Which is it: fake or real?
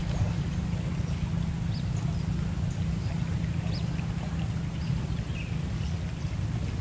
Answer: real